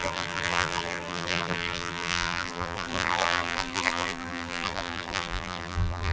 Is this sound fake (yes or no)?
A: yes